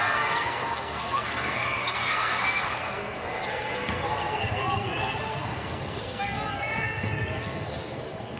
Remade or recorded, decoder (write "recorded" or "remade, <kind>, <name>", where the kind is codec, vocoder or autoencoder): remade, codec, SNAC